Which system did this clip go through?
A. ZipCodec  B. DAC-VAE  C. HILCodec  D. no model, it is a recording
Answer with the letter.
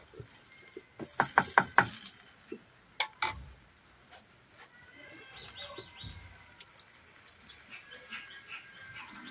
D